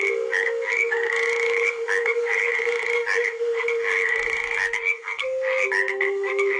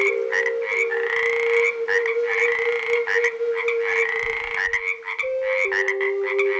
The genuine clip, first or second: second